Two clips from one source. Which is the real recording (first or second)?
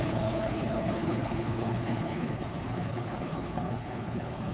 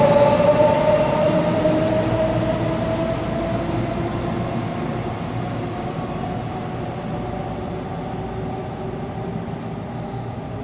second